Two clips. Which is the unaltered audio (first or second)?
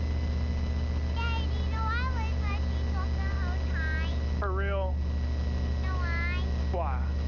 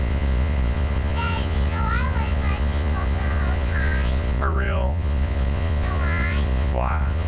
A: first